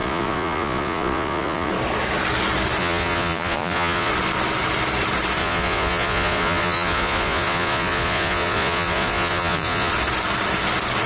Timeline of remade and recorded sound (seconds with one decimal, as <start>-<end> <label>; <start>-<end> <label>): 0.0-1.7 remade; 1.7-2.8 recorded; 2.8-4.1 remade; 4.1-5.4 recorded; 5.4-9.9 remade; 9.9-11.1 recorded